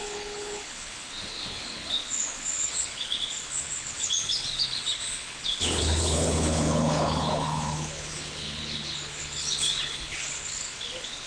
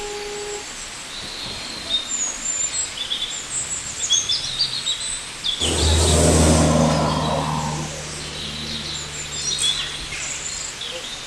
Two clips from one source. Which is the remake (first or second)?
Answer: first